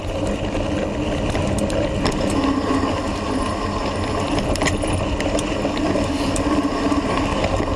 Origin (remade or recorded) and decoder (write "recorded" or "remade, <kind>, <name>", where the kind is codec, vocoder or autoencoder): recorded